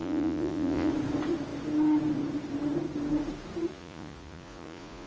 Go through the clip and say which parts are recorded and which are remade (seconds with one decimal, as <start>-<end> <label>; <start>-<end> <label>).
0.0-0.9 remade; 0.9-3.7 recorded; 3.7-5.1 remade